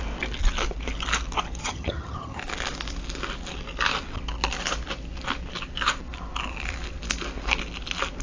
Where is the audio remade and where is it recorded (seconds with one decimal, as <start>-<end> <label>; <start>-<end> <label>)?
0.0-1.6 recorded; 1.6-2.4 remade; 2.4-8.2 recorded